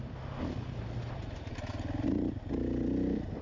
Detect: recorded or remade recorded